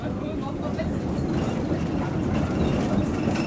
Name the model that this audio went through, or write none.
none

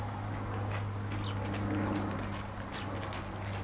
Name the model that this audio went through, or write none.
none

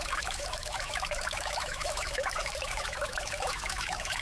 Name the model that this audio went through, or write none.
autoencoder, DAC-VAE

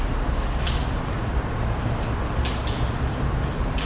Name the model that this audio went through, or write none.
none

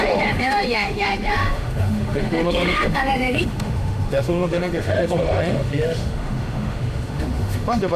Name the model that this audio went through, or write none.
autoencoder, DAC-VAE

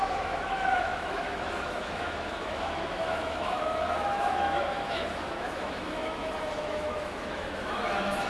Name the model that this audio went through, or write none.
autoencoder, DAC-VAE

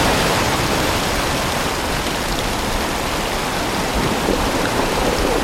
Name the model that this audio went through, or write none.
none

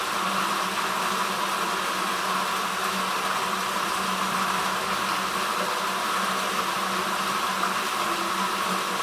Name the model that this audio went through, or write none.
none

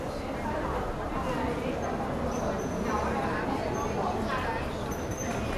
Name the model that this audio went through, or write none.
none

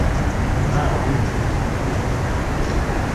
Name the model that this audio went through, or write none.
none